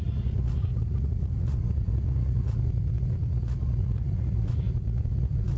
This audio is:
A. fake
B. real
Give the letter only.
A